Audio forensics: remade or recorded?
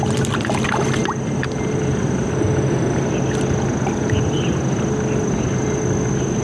recorded